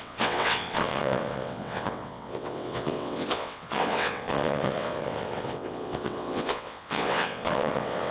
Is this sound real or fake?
fake